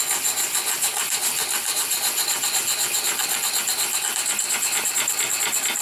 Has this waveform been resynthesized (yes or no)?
no